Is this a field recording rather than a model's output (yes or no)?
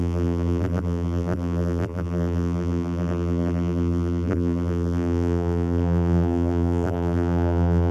no